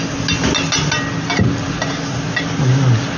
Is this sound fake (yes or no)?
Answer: no